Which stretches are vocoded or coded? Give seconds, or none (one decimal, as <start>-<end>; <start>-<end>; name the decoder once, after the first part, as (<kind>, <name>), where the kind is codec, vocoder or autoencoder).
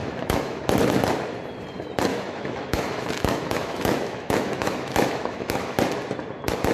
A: 0.0-0.6 (autoencoder, DAC-VAE); 2.1-5.8